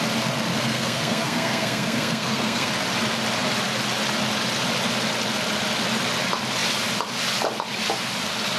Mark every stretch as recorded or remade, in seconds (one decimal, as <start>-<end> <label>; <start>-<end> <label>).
0.0-0.5 recorded; 0.5-2.7 remade; 2.7-8.6 recorded